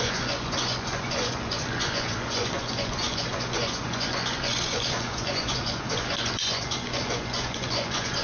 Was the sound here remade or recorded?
remade